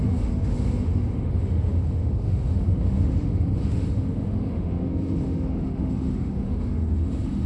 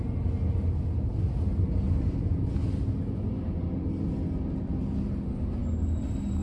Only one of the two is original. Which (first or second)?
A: second